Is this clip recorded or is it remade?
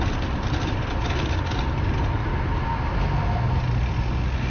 recorded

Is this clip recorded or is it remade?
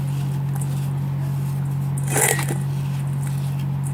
recorded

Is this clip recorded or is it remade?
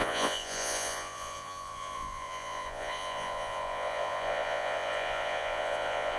remade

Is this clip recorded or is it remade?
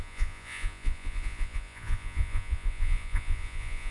remade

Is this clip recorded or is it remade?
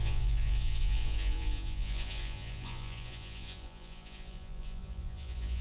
remade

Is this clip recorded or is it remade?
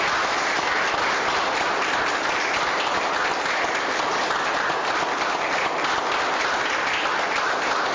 recorded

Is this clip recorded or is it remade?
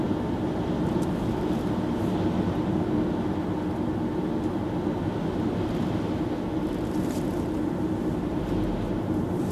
recorded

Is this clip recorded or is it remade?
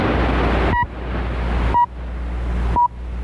recorded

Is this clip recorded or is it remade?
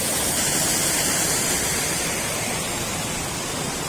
recorded